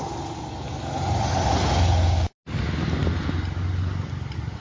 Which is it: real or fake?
real